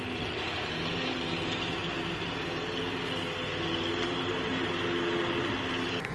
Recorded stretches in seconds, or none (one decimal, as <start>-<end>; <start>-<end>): 0.0-6.1